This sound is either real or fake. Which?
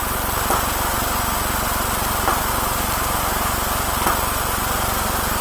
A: real